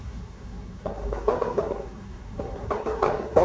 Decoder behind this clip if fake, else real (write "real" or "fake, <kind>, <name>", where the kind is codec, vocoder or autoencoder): fake, codec, SNAC